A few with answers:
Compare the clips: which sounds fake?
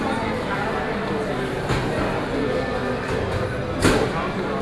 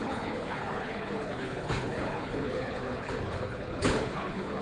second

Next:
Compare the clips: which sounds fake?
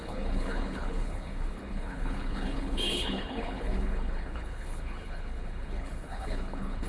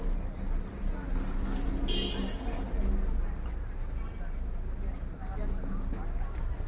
first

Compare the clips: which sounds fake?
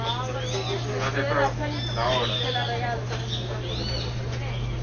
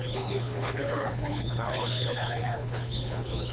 second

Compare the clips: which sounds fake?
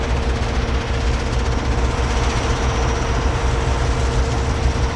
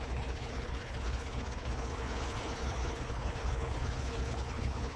second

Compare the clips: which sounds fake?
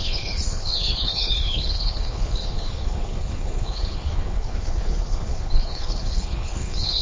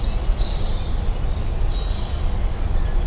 first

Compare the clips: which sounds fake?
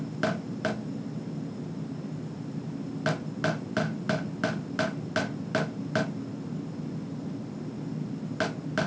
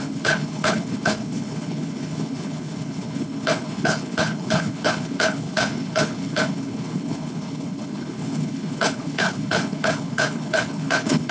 second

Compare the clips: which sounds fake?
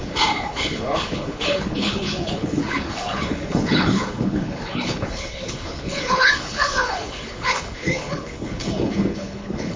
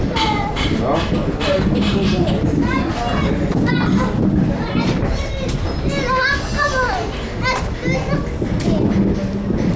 first